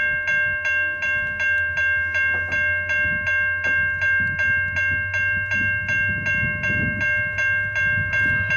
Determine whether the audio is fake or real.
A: real